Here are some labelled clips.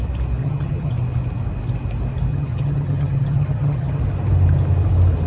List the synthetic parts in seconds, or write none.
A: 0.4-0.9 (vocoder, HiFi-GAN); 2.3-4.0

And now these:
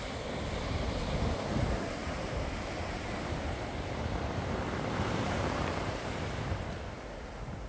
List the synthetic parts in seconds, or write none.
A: 2.0-6.6 (vocoder, BigVGAN v2)

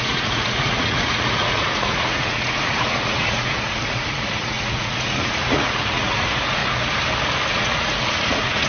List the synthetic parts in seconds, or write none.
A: 0.0-6.6 (vocoder, Vocos); 7.5-8.7

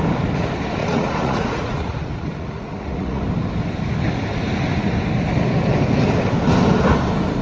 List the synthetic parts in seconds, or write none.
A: 0.8-3.2 (vocoder, Vocos)

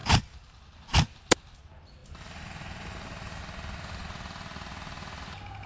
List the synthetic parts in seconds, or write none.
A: 0.0-0.6 (vocoder, BigVGAN v2); 2.0-3.4

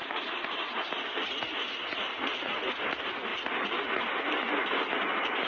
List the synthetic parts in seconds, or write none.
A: 0.0-0.7 (vocoder, Vocos); 2.1-2.7

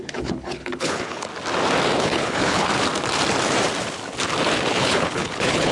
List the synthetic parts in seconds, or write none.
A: 0.0-1.3 (codec, HILCodec); 2.0-2.7; 4.7-5.7

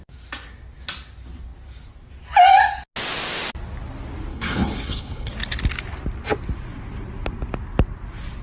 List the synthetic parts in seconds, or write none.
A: 4.3-5.3 (codec, HILCodec)